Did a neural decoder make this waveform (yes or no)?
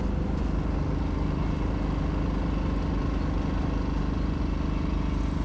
no